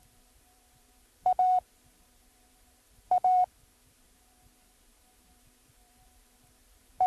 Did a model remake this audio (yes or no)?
yes